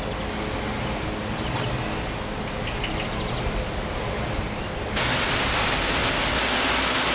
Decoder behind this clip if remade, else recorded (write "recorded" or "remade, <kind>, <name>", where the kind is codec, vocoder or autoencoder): recorded